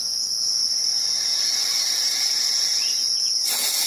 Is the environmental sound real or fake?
fake